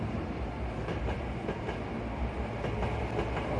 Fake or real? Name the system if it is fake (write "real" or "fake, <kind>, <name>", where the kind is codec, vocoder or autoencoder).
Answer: real